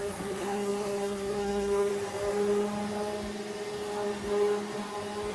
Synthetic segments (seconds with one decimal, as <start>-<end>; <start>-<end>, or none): 0.0-1.9